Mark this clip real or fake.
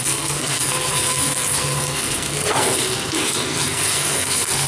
fake